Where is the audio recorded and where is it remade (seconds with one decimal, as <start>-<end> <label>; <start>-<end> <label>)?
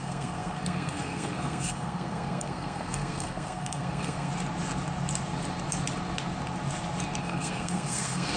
0.0-4.3 remade; 4.3-7.2 recorded; 7.2-8.4 remade